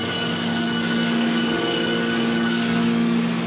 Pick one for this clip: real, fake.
fake